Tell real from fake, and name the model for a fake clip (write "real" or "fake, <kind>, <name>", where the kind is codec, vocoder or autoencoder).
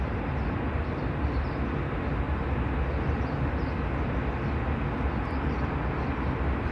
real